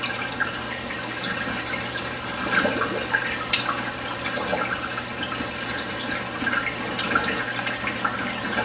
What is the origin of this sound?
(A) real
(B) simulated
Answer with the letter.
A